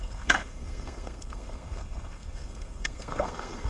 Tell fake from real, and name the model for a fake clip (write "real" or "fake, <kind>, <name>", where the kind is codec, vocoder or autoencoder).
fake, codec, SNAC